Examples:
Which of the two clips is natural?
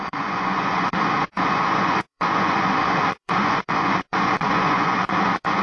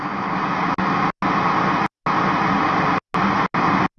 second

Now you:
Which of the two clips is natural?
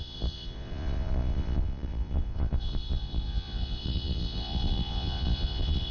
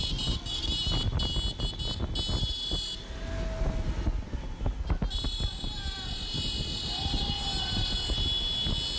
second